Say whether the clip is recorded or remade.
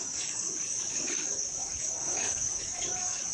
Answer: remade